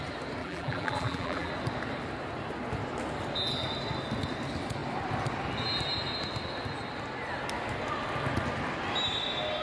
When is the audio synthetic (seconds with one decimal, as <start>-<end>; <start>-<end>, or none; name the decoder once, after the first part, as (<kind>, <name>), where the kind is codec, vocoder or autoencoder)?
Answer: 0.4-1.5 (vocoder, BigVGAN v2)